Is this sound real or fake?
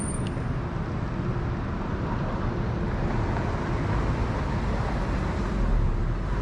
real